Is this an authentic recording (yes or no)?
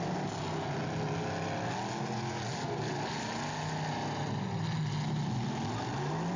yes